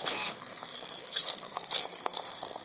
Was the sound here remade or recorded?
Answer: remade